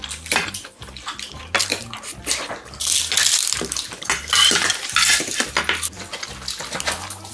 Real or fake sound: real